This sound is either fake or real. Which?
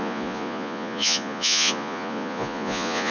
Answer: fake